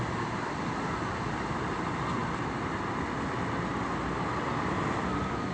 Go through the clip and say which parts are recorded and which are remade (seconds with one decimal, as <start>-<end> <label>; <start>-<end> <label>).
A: 0.0-5.5 recorded